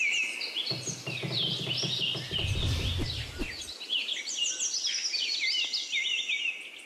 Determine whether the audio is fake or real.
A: real